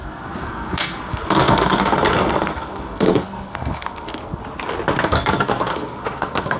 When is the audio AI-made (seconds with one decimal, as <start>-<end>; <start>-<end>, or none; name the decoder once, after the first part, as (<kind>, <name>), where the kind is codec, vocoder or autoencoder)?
0.0-4.4 (codec, SNAC); 5.0-6.6